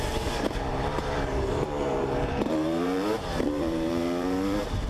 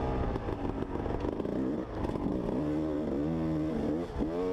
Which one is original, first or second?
second